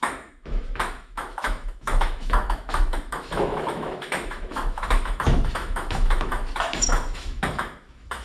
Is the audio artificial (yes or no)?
yes